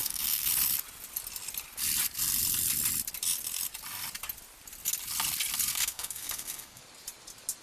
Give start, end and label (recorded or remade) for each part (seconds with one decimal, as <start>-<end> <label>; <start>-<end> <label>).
0.0-0.5 remade; 0.5-5.7 recorded; 5.7-6.8 remade; 6.8-7.6 recorded